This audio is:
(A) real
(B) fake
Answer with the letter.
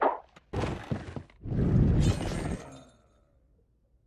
A